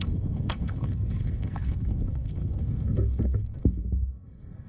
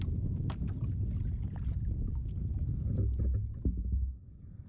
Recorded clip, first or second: second